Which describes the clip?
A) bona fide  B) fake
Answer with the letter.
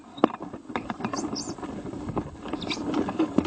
A